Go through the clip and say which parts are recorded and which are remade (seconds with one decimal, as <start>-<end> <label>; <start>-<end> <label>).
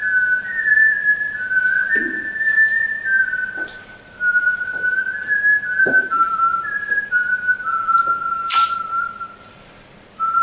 0.0-10.4 recorded